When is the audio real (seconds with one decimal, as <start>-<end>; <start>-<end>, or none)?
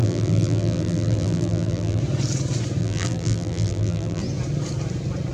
2.0-2.8; 4.2-5.3